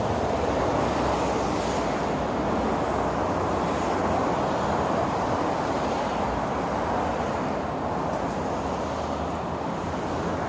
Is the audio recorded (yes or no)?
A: yes